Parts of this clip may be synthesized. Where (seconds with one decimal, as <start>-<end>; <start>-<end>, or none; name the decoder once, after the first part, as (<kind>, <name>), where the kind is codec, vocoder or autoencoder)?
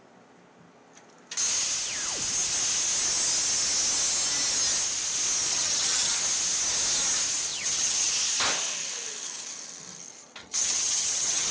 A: 5.5-6.2 (vocoder, HiFi-GAN); 7.5-8.1; 10.4-11.5